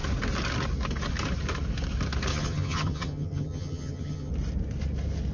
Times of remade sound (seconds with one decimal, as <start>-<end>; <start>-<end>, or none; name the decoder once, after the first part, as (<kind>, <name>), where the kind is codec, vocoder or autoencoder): 2.3-4.3 (vocoder, HiFi-GAN)